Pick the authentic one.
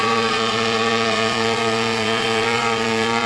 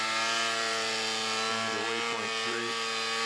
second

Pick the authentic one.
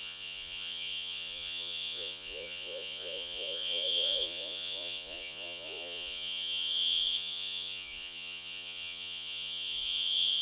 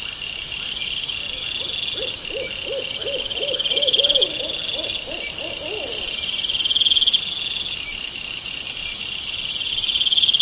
second